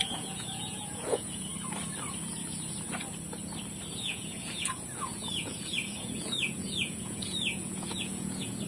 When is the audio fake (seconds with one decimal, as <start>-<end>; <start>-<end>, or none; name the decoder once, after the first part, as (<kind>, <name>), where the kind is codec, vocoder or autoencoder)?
0.0-1.5 (vocoder, Vocos); 4.0-8.7